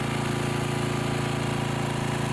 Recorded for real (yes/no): yes